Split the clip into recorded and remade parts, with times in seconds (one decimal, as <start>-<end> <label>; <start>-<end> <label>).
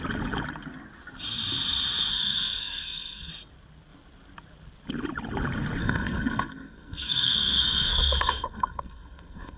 0.0-2.1 recorded; 2.1-3.3 remade; 3.3-5.8 recorded; 5.8-9.6 remade